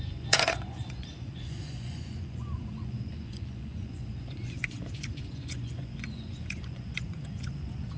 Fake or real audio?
fake